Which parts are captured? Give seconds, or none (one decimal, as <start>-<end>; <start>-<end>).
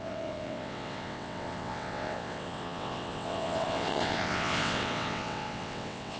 none